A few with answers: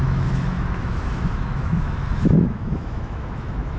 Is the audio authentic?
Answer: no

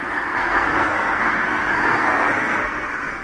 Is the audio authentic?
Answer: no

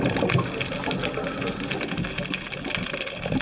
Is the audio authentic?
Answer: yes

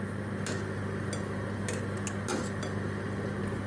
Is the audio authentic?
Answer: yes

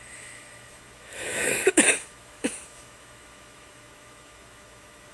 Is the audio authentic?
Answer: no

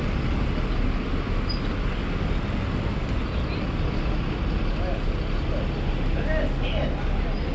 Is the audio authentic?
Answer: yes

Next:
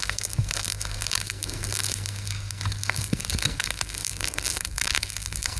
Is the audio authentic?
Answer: no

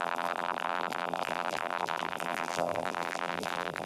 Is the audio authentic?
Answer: no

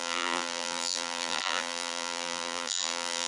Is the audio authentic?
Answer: no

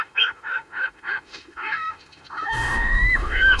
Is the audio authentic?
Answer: no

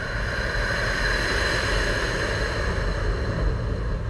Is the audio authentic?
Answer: yes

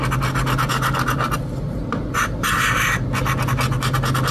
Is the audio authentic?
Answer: yes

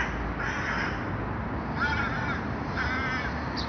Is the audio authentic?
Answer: yes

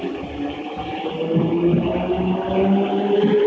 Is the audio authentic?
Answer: yes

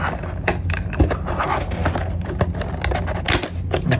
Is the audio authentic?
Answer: yes